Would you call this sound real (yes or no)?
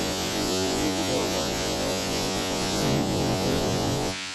no